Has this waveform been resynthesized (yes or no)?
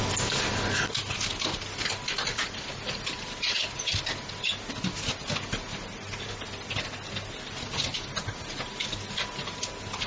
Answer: no